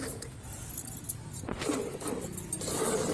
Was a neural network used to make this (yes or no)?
no